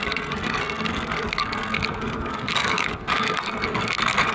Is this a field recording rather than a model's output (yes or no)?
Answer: no